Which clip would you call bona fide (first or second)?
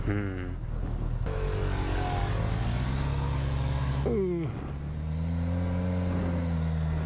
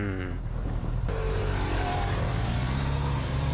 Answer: first